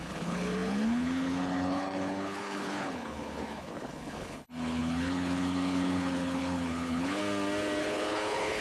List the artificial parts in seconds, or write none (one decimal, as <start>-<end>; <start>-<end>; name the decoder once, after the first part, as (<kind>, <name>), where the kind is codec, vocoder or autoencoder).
0.0-7.2 (codec, HILCodec); 7.8-8.6